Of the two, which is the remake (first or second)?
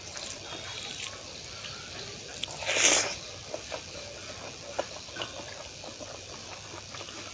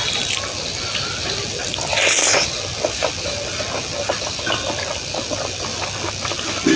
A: first